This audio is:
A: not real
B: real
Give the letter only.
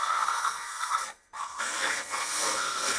A